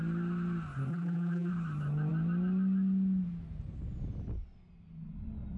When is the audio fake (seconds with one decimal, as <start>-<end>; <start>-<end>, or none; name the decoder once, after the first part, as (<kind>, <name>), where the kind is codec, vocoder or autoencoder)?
0.9-1.5 (vocoder, BigVGAN v2)